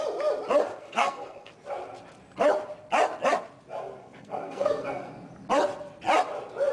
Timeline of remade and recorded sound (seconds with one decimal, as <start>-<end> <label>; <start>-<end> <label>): 0.0-0.8 recorded; 0.8-1.5 remade; 1.5-4.0 recorded; 4.0-5.1 remade; 5.1-6.7 recorded